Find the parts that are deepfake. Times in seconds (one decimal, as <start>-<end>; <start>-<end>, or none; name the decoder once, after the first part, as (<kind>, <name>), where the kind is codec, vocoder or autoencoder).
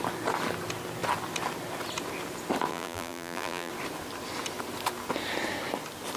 2.7-3.7 (vocoder, BigVGAN v2)